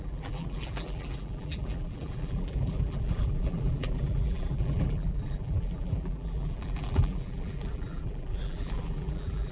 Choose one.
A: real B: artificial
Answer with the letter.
B